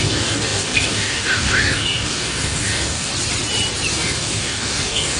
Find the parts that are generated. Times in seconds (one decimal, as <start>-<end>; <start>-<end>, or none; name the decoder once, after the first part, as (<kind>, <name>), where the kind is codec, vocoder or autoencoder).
0.0-3.1 (codec, DAC); 3.9-5.2